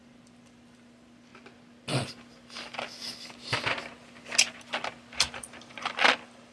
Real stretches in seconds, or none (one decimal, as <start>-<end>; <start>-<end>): 1.3-5.2